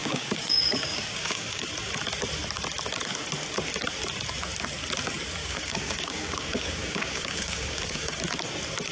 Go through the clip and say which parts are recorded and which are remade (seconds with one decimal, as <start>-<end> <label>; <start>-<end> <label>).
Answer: 0.0-1.7 remade; 1.7-5.4 recorded; 5.4-8.2 remade; 8.2-8.9 recorded